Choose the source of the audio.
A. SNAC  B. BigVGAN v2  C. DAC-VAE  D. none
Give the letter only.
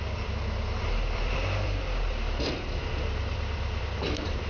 B